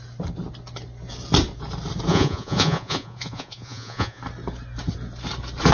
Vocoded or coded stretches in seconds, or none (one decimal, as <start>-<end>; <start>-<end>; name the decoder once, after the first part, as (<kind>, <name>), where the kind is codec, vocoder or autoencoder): 2.1-4.2 (vocoder, Vocos)